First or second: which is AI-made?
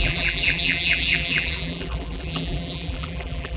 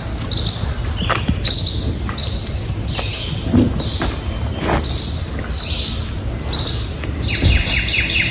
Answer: first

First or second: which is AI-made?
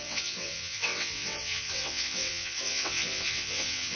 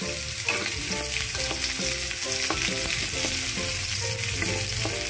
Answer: first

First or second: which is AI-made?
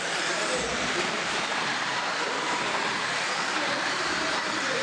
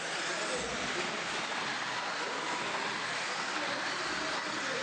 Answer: first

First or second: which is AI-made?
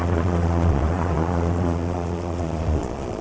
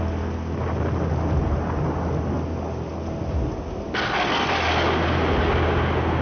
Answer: first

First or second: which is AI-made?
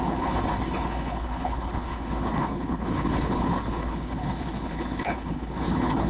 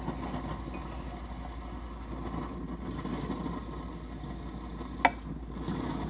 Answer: first